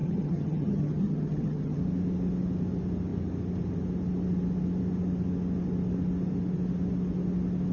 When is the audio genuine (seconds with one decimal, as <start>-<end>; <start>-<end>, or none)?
1.8-7.7